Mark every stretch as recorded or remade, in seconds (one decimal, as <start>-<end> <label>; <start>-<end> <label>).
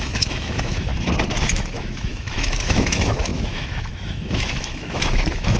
0.0-0.9 remade; 0.9-1.4 recorded; 1.4-5.6 remade